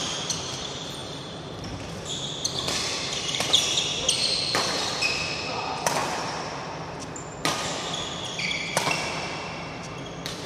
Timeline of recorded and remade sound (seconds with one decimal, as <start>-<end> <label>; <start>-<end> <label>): 0.0-6.0 remade; 6.0-7.6 recorded; 7.6-10.5 remade